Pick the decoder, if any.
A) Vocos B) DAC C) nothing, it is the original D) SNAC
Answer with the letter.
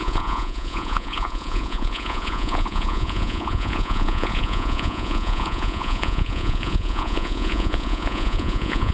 A